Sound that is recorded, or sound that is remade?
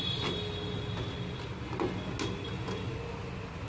recorded